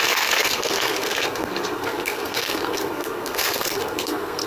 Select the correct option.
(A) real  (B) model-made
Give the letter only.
B